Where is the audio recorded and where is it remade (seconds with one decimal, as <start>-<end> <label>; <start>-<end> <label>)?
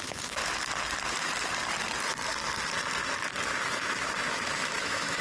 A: 0.0-0.4 remade; 0.4-3.5 recorded; 3.5-5.2 remade